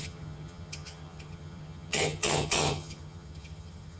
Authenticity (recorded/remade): remade